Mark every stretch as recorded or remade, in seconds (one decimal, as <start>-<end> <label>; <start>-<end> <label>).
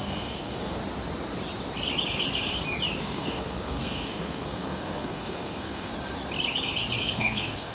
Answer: 0.0-0.8 remade; 0.8-3.0 recorded; 3.0-5.9 remade; 5.9-7.0 recorded; 7.0-7.7 remade